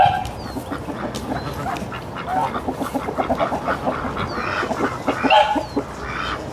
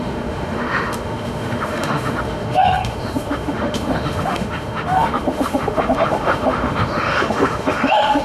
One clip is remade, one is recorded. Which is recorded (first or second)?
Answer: first